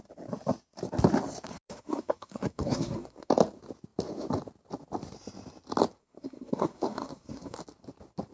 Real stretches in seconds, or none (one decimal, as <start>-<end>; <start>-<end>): 0.0-1.5; 3.3-6.0; 7.6-8.3